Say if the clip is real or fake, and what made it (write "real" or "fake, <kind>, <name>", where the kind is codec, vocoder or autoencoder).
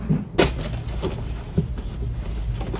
real